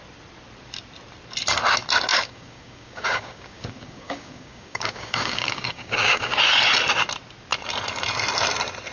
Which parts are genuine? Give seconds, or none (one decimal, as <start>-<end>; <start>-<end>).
0.0-2.1; 6.4-8.9